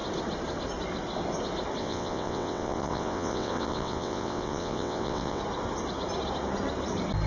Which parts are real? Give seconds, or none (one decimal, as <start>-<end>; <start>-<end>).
0.0-1.8; 5.4-7.3